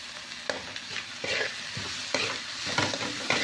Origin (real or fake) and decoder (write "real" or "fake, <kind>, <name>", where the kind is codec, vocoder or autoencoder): real